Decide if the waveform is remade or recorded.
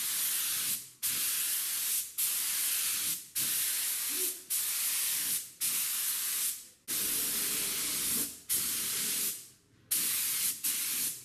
recorded